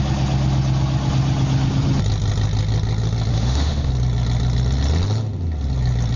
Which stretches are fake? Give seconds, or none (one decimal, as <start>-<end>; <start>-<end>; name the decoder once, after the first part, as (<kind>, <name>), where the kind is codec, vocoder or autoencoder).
3.3-3.9 (autoencoder, DAC-VAE)